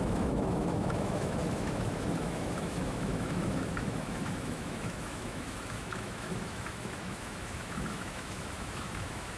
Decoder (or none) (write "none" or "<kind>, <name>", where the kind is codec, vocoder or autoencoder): autoencoder, DAC-VAE